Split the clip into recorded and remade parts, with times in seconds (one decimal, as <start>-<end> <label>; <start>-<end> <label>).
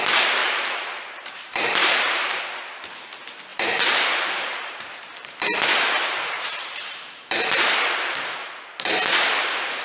0.0-0.4 recorded; 0.4-2.4 remade; 2.4-3.5 recorded; 3.5-8.5 remade; 8.5-9.8 recorded